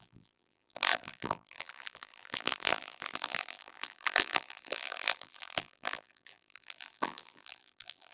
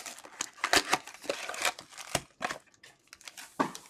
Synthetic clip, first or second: first